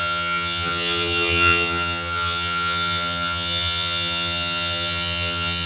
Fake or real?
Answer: fake